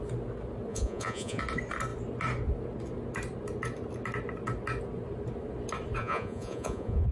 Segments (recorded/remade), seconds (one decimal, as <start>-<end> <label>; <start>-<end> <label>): 0.0-0.7 recorded; 0.7-1.4 remade; 1.4-6.0 recorded; 6.0-7.1 remade